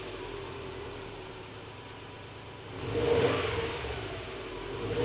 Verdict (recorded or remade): remade